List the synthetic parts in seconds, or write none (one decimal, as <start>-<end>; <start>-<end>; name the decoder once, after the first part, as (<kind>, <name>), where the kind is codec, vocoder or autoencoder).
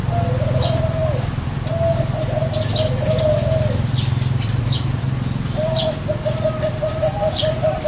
none